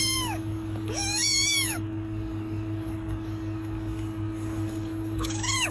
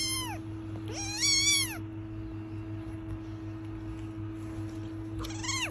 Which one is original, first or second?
second